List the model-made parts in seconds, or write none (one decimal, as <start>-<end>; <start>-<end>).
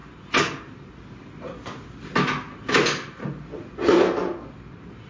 none